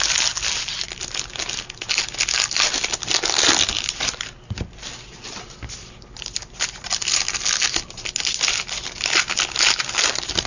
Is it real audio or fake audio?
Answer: real